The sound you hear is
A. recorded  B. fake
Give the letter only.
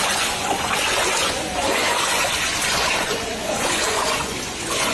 B